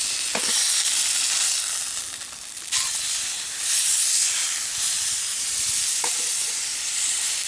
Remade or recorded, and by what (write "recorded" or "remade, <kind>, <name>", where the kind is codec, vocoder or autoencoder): recorded